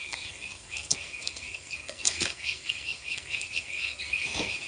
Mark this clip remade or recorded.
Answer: remade